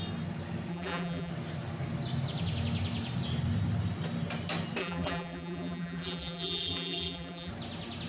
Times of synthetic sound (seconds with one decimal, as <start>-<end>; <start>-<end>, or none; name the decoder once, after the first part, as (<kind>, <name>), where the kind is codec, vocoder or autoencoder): 0.7-1.3 (vocoder, BigVGAN v2); 4.8-7.5